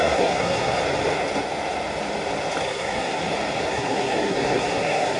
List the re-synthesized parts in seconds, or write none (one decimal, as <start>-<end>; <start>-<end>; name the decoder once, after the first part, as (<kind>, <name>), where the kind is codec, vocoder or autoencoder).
0.0-0.8 (codec, SNAC); 2.6-3.2; 3.7-5.2